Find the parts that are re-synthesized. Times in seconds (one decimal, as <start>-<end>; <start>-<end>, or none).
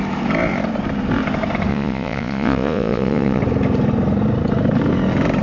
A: 1.7-3.4